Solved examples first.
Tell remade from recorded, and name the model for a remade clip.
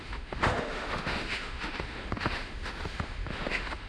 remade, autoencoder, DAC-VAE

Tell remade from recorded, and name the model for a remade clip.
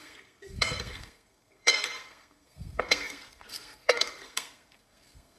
remade, codec, SNAC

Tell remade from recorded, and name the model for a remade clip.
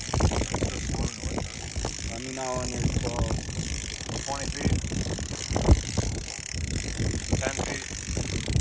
recorded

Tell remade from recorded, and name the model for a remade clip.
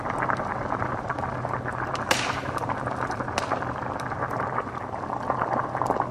recorded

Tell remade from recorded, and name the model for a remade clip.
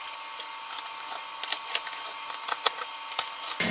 recorded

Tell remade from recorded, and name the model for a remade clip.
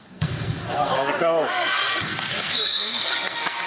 remade, codec, SNAC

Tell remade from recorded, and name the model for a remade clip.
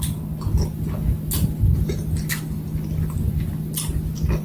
recorded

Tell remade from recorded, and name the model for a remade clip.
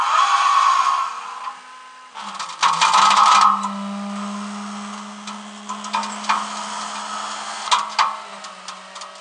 recorded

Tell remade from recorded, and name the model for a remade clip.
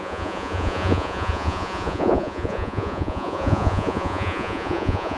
remade, vocoder, Vocos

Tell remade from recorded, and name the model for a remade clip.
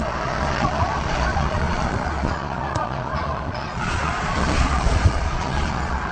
remade, vocoder, Vocos